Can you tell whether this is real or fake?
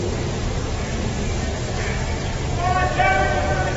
real